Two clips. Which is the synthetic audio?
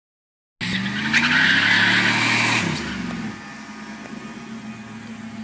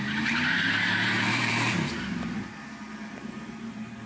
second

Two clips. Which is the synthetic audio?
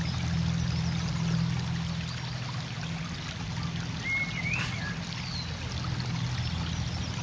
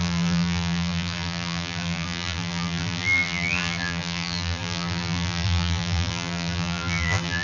second